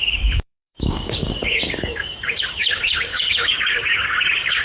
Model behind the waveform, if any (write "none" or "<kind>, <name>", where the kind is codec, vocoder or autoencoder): codec, DAC